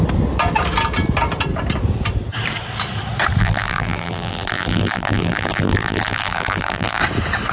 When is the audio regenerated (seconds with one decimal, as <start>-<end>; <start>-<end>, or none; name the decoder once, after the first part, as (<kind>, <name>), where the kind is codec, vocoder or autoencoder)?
3.4-7.0 (vocoder, BigVGAN v2)